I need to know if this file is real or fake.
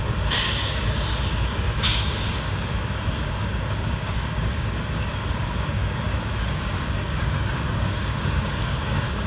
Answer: fake